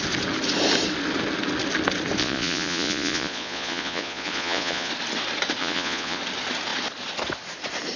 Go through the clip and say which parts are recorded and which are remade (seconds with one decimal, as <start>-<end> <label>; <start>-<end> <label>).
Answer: 0.0-2.2 recorded; 2.2-4.9 remade; 4.9-5.6 recorded; 5.6-6.2 remade; 6.2-8.0 recorded